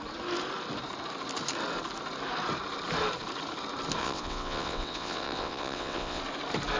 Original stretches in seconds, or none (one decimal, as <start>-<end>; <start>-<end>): 0.0-4.0; 6.2-6.8